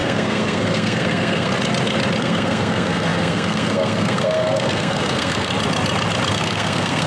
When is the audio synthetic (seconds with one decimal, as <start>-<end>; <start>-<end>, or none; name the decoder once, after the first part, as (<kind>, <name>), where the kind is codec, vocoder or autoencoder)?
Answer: 0.0-1.5 (codec, SNAC); 2.2-5.5; 6.3-7.1